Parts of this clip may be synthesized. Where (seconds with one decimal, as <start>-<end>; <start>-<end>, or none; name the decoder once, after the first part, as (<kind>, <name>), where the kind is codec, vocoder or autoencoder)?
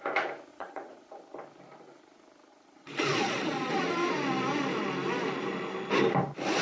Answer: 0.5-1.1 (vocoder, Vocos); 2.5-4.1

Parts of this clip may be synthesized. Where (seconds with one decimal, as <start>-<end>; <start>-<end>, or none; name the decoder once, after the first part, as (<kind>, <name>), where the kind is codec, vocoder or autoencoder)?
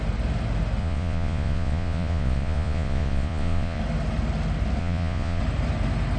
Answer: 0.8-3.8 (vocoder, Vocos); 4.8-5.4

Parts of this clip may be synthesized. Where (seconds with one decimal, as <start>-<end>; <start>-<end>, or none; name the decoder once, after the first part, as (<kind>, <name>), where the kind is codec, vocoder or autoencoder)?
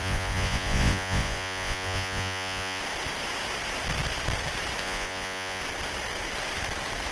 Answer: 0.0-2.8 (vocoder, Vocos); 4.8-5.6